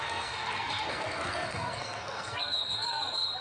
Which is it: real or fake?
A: fake